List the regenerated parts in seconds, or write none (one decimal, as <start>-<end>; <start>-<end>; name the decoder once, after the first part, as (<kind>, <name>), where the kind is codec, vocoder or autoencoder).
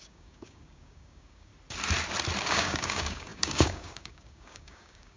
0.0-1.5 (codec, DAC); 2.4-5.2